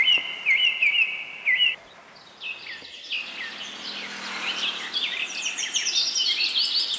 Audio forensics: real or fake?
real